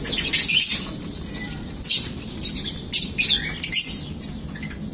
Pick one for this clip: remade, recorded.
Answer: recorded